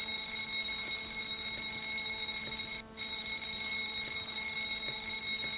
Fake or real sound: real